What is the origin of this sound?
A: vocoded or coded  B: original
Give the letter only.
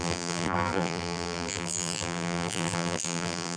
A